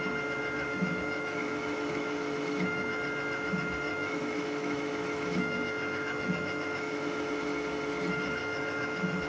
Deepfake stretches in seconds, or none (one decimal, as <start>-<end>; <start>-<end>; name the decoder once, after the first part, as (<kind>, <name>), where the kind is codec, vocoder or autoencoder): 0.7-3.0 (autoencoder, DAC-VAE); 3.9-7.3; 8.4-9.3

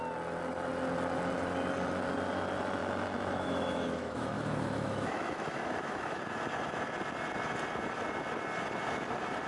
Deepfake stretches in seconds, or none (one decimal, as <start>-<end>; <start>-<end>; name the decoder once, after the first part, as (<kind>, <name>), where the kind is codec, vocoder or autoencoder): 2.8-6.2 (autoencoder, DAC-VAE)

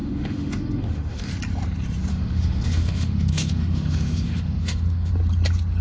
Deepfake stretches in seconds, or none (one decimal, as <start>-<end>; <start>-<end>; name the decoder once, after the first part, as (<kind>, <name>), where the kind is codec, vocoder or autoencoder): 0.0-1.3 (autoencoder, DAC-VAE); 2.1-5.1

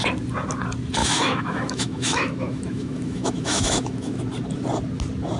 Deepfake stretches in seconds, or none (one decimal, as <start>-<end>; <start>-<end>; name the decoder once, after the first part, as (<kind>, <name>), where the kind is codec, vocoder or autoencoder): 1.0-4.2 (autoencoder, DAC-VAE)

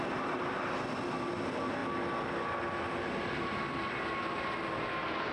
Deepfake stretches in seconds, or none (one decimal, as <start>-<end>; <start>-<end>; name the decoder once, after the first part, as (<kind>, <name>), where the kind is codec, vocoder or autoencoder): none

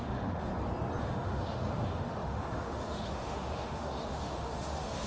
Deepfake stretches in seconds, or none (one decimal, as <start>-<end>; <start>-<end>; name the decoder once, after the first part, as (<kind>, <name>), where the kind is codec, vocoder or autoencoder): 0.0-0.5 (autoencoder, DAC-VAE); 1.0-5.1

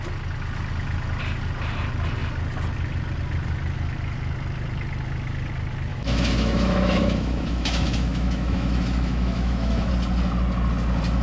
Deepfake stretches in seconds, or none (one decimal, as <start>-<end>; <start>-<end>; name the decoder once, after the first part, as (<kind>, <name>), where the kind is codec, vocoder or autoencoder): 5.9-9.9 (autoencoder, DAC-VAE)

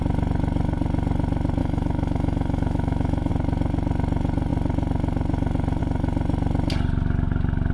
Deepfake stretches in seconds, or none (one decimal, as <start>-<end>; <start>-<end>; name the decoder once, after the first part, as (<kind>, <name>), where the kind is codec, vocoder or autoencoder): 1.6-3.3 (autoencoder, DAC-VAE)